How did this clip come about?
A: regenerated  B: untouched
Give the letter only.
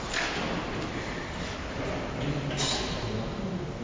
B